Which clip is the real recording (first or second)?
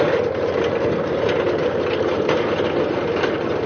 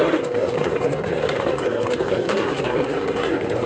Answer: first